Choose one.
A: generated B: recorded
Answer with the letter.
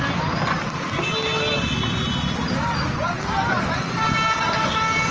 B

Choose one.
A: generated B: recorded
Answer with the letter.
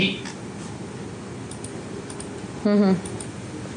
B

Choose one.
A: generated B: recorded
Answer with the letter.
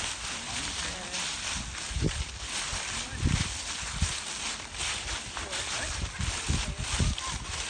B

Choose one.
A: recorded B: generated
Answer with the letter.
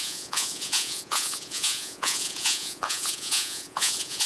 B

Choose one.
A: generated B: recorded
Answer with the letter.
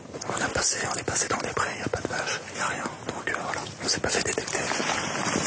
B